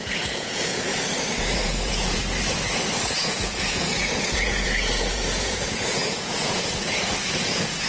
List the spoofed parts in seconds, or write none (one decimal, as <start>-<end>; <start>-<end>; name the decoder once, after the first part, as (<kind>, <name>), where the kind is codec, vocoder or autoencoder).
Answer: 0.0-0.9 (vocoder, Vocos); 1.4-2.2; 3.2-7.9